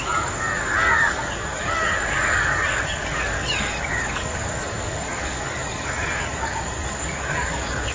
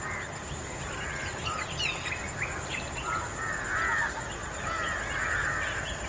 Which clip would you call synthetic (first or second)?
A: first